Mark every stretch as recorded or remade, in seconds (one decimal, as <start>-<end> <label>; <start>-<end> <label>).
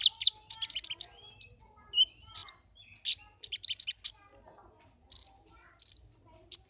0.0-6.7 recorded